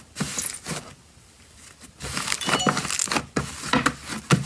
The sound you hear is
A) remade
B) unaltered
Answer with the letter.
B